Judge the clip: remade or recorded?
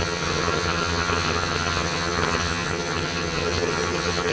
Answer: remade